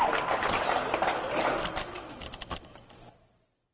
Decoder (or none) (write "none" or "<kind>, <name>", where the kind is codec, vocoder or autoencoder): none